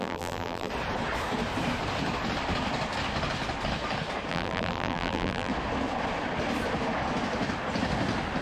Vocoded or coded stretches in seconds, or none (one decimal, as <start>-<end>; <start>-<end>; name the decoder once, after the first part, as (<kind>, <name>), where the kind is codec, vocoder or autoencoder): 0.0-0.7 (vocoder, BigVGAN v2); 4.3-5.5